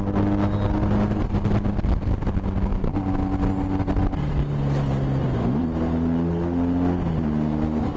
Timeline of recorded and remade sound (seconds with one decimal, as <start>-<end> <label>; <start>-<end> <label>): 0.0-8.0 recorded